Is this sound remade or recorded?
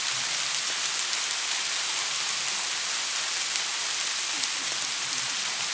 recorded